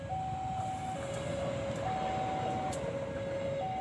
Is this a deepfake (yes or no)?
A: no